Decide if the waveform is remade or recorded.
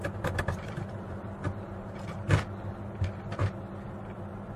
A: recorded